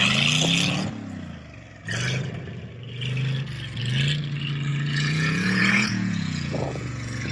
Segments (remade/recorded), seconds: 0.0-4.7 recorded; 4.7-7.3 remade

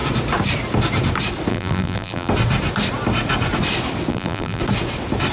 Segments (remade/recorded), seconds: 0.0-1.5 recorded; 1.5-2.3 remade; 2.3-4.1 recorded; 4.1-4.6 remade; 4.6-5.3 recorded